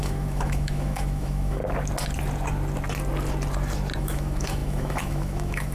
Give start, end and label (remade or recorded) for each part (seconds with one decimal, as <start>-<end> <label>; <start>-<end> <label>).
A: 0.0-1.6 remade; 1.6-4.0 recorded; 4.0-5.7 remade